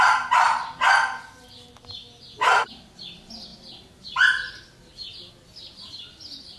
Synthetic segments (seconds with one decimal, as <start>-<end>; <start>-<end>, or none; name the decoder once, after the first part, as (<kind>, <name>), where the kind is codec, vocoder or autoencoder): none